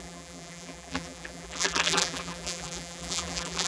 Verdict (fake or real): fake